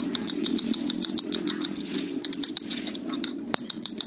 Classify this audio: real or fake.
fake